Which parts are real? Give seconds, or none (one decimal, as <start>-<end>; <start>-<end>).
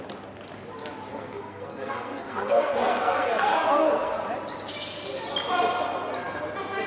0.0-1.1; 4.2-6.9